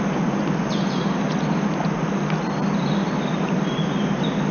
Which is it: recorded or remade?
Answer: recorded